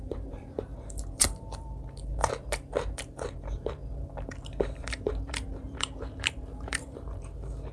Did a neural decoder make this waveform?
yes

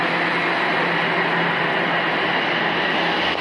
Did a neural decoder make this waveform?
no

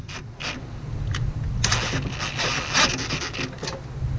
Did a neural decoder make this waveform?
no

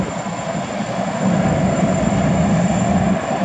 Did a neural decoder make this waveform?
no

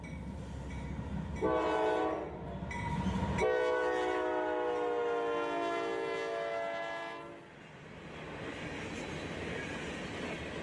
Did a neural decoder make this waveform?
no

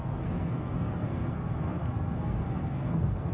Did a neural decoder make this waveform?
yes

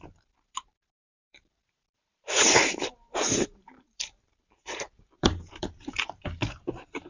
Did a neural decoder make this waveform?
yes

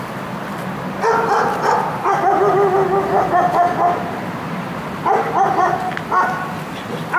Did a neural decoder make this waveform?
no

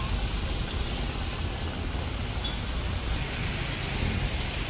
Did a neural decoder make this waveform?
no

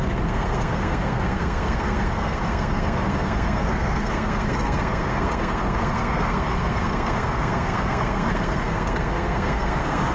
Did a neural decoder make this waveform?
yes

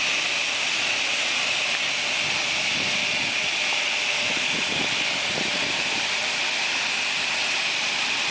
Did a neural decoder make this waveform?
no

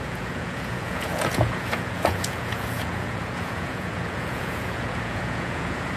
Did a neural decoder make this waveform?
yes